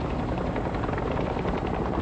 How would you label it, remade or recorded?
recorded